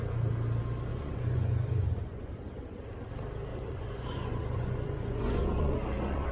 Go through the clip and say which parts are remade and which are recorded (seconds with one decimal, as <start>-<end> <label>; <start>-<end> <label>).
0.0-0.9 recorded; 0.9-2.3 remade; 2.3-3.5 recorded; 3.5-6.3 remade